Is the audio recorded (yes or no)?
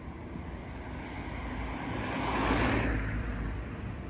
yes